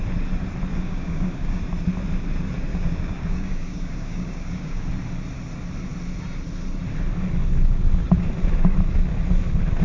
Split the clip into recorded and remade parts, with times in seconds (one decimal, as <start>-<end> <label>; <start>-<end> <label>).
0.0-0.7 recorded; 0.7-1.6 remade; 1.6-2.7 recorded; 2.7-4.9 remade; 4.9-9.8 recorded